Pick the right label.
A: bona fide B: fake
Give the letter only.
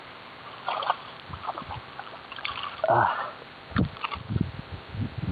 B